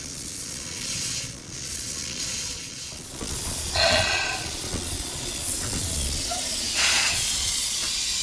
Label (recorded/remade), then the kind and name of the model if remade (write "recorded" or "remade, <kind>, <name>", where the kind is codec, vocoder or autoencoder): remade, vocoder, Vocos